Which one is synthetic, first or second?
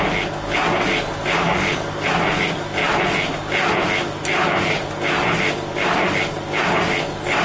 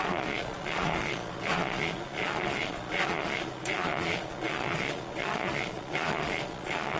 second